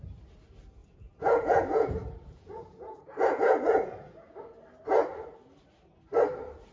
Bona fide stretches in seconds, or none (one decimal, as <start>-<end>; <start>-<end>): 0.0-0.8; 4.4-6.7